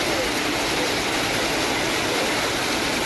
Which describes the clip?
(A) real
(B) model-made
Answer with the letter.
A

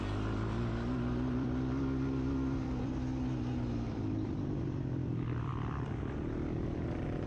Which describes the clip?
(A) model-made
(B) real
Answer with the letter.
A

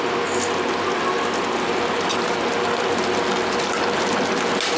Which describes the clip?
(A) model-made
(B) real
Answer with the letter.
B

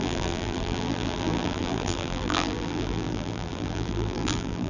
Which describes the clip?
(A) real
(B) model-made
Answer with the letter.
B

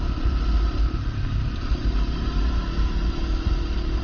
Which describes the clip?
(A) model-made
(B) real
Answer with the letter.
A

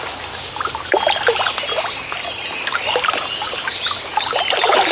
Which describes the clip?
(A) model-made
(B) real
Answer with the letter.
B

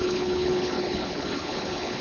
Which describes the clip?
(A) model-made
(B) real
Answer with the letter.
A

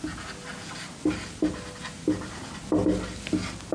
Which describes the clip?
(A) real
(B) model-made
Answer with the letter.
A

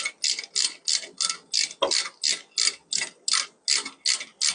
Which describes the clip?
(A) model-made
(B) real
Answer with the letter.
B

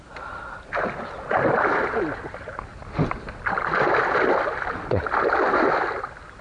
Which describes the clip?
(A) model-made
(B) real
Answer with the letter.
B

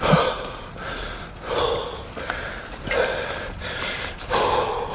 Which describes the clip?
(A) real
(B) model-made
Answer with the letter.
A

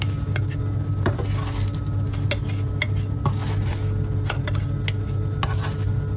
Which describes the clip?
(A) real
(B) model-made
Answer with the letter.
A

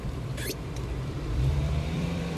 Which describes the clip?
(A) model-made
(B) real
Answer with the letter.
A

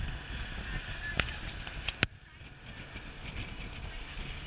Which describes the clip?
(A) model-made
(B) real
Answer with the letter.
B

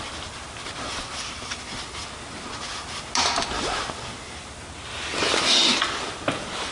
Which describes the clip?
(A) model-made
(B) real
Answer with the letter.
B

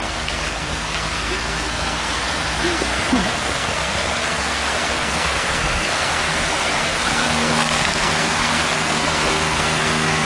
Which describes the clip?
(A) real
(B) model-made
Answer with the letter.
B